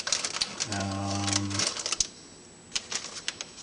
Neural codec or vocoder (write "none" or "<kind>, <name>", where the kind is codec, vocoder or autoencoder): none